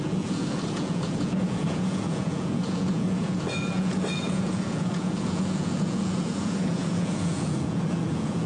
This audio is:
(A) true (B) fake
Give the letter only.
B